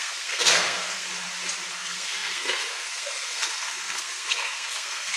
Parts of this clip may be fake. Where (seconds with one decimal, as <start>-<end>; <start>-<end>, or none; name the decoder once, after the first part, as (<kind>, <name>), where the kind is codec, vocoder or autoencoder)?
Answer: 0.0-1.1 (codec, SNAC); 1.7-5.2